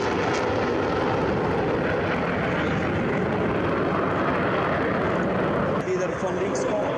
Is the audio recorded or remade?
recorded